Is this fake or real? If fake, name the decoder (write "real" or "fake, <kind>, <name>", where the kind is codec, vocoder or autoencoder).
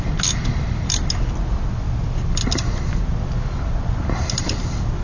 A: real